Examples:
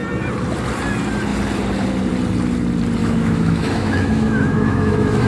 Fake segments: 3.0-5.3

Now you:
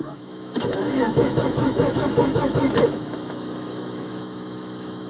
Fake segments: 0.0-5.1

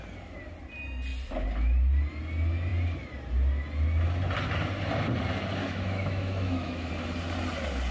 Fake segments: 5.6-6.9

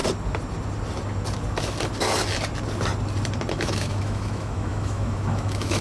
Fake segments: 3.5-5.8

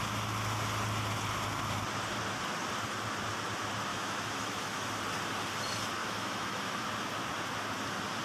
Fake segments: 3.9-4.9; 6.0-6.8

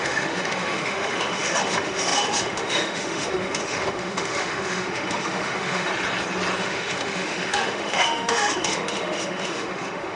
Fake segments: 0.0-5.9; 6.6-10.2

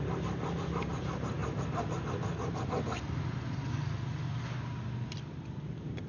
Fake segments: none